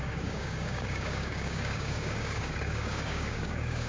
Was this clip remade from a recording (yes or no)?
yes